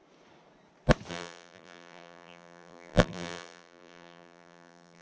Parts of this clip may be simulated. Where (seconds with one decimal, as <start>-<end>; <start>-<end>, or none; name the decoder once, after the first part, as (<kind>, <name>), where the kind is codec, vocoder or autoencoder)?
1.1-5.0 (vocoder, BigVGAN v2)